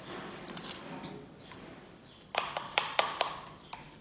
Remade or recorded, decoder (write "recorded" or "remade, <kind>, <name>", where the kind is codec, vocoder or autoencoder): remade, vocoder, BigVGAN v2